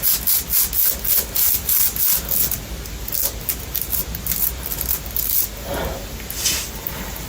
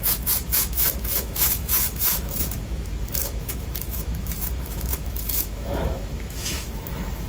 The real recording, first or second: first